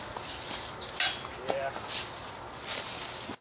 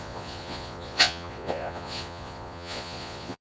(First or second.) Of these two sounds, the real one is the first